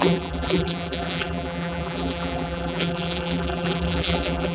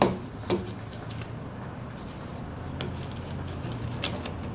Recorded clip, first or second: second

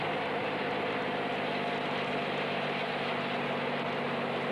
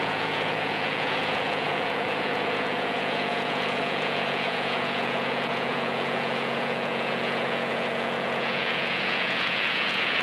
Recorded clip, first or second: first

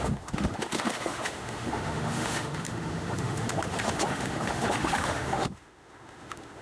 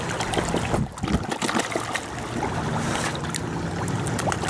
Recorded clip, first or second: second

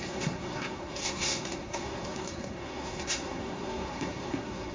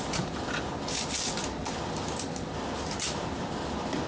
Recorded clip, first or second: second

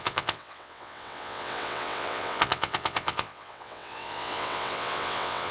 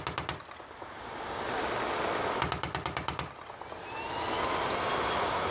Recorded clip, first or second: second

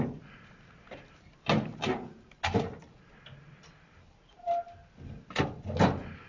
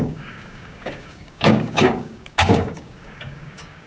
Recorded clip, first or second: first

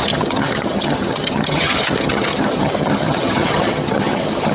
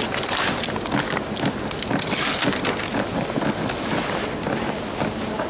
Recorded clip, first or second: second